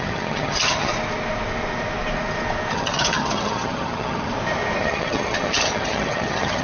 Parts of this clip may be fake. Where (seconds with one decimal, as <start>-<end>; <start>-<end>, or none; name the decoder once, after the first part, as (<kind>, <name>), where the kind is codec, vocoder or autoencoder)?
0.0-0.9 (vocoder, HiFi-GAN); 2.7-4.3; 4.8-6.6